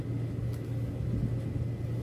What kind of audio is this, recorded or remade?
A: recorded